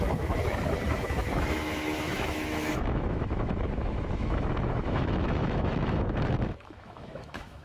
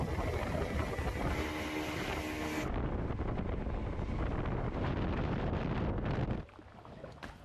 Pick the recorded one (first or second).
second